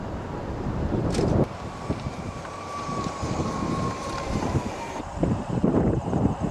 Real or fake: fake